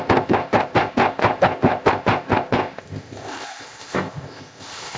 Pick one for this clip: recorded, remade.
remade